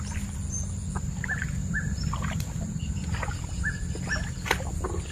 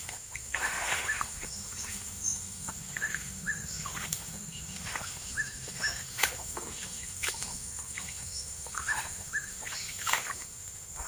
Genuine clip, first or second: first